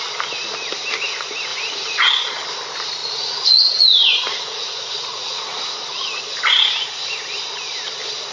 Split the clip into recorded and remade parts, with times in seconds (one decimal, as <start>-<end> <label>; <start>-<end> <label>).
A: 0.0-1.5 recorded; 1.5-2.1 remade; 2.1-3.0 recorded; 3.0-6.3 remade; 6.3-8.3 recorded